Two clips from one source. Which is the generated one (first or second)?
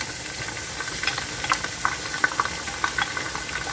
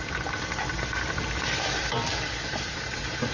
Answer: second